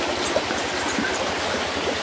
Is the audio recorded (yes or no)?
yes